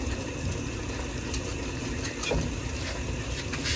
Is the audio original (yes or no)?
yes